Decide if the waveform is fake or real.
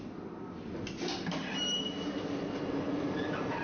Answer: real